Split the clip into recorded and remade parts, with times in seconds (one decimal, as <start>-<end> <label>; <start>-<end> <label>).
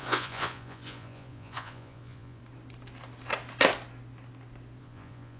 0.0-2.4 remade; 2.4-4.8 recorded; 4.8-5.4 remade